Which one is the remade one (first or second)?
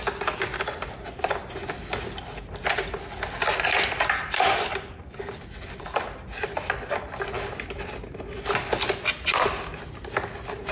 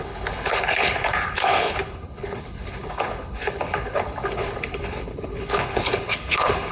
second